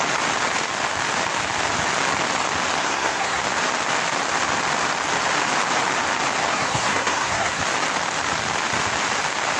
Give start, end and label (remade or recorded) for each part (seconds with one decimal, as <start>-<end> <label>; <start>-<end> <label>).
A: 0.0-2.8 recorded; 2.8-3.4 remade; 3.4-6.5 recorded; 6.5-7.6 remade; 7.6-9.6 recorded